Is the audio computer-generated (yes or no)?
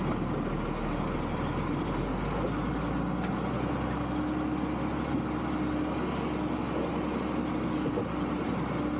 no